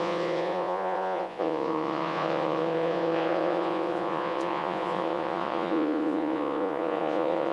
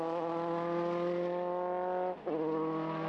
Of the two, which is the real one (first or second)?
second